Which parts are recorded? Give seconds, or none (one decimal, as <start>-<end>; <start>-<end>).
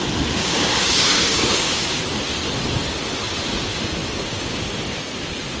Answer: 0.0-0.4; 2.0-4.0; 4.6-5.6